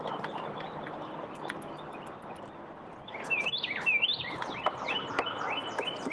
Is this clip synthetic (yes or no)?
no